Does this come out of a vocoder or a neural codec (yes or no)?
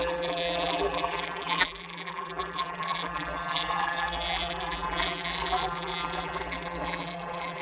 yes